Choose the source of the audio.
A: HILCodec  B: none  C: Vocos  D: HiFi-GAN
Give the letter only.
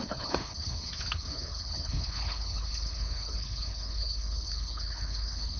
A